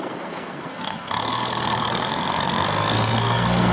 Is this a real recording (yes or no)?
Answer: no